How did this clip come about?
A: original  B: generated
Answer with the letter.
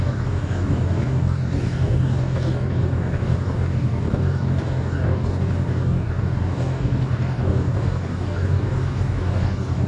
B